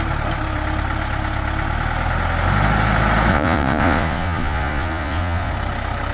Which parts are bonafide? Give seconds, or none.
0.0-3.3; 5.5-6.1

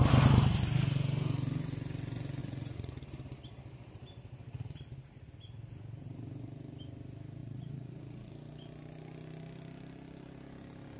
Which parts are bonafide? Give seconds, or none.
0.0-2.4; 2.9-7.4; 8.3-11.0

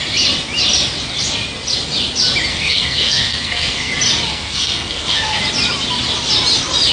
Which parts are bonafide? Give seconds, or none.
0.0-2.5; 3.9-4.3; 5.4-6.9

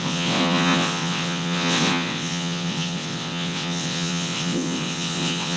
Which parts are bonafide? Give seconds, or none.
none

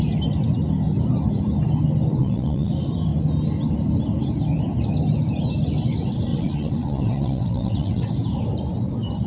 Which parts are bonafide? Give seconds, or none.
0.0-2.2; 2.7-6.3; 8.1-9.3

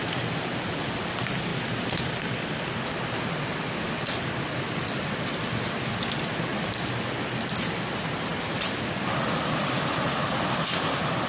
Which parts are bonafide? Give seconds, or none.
0.0-11.3